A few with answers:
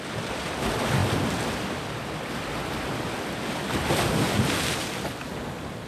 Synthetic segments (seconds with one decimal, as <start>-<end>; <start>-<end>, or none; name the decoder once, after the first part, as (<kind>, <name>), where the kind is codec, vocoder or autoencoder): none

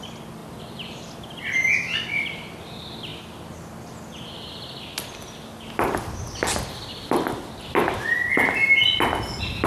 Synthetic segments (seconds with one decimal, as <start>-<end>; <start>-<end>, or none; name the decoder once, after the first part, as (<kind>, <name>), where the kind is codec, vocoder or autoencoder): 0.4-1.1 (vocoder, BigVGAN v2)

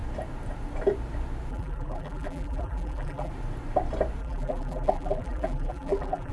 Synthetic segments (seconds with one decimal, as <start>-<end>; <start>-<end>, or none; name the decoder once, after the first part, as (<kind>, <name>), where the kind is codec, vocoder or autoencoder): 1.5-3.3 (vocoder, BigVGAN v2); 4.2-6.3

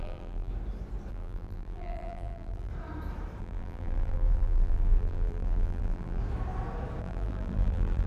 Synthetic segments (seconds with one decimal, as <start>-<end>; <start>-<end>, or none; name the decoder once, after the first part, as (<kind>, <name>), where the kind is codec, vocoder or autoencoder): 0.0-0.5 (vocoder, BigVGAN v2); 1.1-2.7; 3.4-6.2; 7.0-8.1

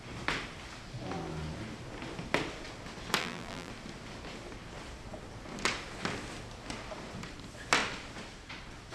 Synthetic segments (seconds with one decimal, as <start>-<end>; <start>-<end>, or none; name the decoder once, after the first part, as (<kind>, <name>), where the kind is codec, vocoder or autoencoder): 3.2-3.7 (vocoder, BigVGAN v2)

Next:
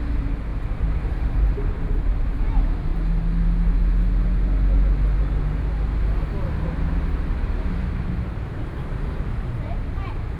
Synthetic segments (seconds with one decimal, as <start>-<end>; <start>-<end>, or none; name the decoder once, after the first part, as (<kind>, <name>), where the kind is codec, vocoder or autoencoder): 0.0-0.5 (vocoder, BigVGAN v2); 1.1-2.9; 6.5-9.8